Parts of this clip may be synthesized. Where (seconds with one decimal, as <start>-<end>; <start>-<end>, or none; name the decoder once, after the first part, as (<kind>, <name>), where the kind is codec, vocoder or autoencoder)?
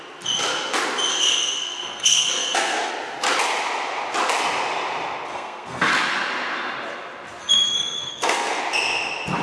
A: 1.1-2.9 (codec, SNAC); 5.3-5.9; 7.4-8.6